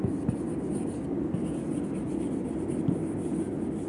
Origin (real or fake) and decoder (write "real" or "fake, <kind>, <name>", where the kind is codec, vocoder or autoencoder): real